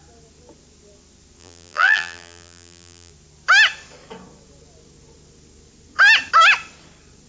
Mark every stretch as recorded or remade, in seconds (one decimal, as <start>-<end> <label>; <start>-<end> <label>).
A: 0.0-1.4 recorded; 1.4-3.1 remade; 3.1-7.3 recorded